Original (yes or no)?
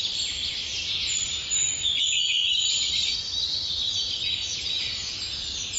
yes